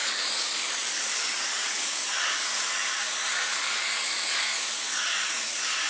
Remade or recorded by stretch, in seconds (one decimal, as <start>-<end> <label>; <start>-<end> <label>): 0.0-5.9 remade